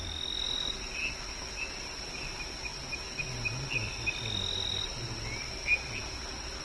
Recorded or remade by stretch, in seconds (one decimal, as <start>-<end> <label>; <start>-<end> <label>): 0.0-6.6 recorded